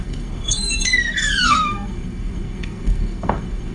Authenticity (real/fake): fake